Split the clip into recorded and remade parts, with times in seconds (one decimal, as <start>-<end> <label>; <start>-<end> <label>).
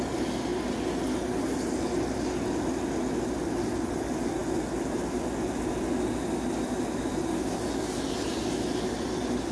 0.0-9.5 recorded